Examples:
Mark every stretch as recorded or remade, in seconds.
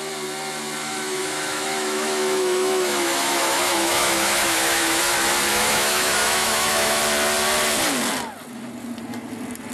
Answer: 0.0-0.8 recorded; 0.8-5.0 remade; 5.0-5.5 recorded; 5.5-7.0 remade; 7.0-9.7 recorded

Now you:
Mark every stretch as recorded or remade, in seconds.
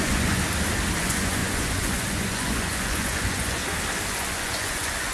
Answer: 0.0-0.4 remade; 0.4-1.0 recorded; 1.0-3.6 remade; 3.6-4.1 recorded; 4.1-5.1 remade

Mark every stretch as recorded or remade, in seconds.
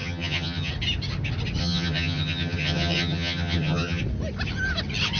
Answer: 0.0-0.7 remade; 0.7-1.6 recorded; 1.6-4.0 remade; 4.0-5.2 recorded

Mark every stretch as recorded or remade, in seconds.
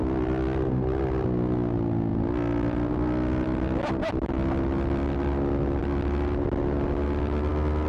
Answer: 0.0-7.9 recorded